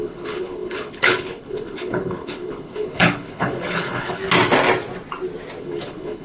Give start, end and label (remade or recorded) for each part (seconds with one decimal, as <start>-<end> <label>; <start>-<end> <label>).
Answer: 0.0-4.2 remade; 4.2-5.6 recorded; 5.6-6.2 remade